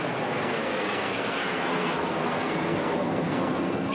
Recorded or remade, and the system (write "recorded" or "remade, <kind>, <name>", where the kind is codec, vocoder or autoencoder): remade, codec, SNAC